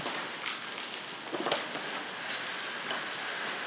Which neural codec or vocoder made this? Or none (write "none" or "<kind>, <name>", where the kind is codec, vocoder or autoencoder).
none